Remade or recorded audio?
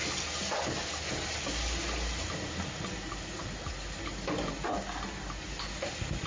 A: recorded